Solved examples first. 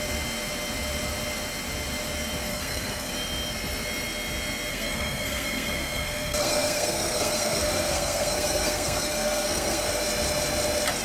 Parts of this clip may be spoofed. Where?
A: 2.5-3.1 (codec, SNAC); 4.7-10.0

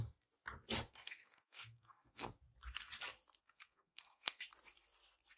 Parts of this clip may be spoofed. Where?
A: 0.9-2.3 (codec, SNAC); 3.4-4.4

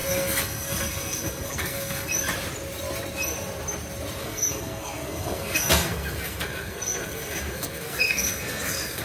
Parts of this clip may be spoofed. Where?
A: 0.0-2.1 (codec, SNAC); 4.2-9.0

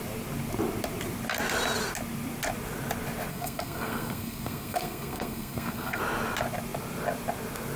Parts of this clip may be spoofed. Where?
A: 3.3-6.0 (codec, SNAC)